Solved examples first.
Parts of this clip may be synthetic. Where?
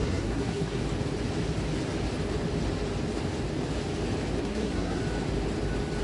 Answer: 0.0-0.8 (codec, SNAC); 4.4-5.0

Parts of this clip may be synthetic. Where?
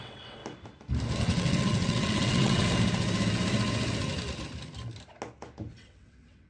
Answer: 0.0-0.4 (vocoder, WaveNeXt); 1.2-2.6; 5.7-6.5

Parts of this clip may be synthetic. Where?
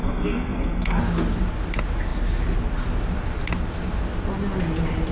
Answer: 0.0-1.0 (codec, SNAC)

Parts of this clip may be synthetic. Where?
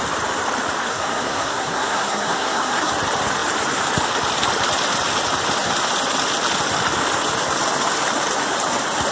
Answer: 0.9-2.9 (codec, SNAC)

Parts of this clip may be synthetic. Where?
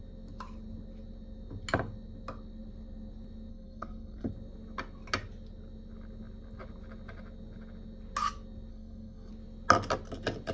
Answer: 3.5-4.3 (codec, SNAC); 8.7-9.3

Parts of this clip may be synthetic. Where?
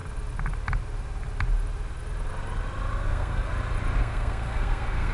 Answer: 3.1-3.5 (codec, SNAC); 4.0-5.1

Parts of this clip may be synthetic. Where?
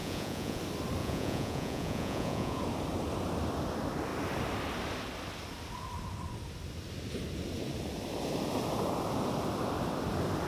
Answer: 0.0-0.6 (vocoder, Vocos); 1.0-2.6